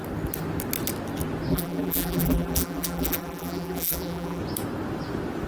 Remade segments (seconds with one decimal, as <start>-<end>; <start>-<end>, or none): 1.5-4.4